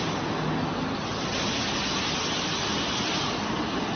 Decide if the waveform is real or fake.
real